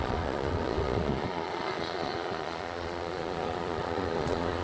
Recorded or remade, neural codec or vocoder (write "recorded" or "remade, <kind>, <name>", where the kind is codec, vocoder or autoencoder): remade, vocoder, Vocos